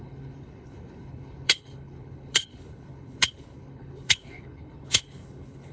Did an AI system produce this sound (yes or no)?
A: yes